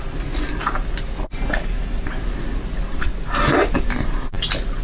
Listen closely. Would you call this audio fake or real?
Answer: real